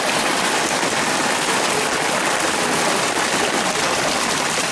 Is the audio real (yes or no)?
yes